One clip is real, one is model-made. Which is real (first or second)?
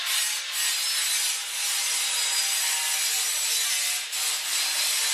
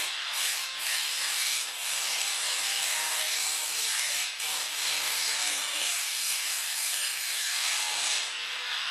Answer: first